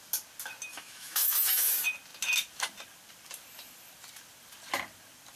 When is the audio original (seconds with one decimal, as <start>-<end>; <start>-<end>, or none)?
0.0-0.7; 1.7-5.4